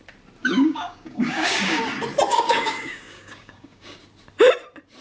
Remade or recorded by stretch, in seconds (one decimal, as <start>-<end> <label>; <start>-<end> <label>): 0.0-0.4 recorded; 0.4-1.8 remade; 1.8-2.3 recorded; 2.3-4.0 remade; 4.0-5.0 recorded